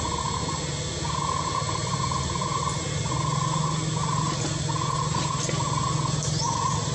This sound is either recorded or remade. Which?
recorded